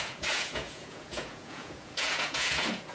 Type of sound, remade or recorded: remade